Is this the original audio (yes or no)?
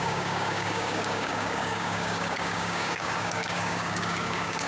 no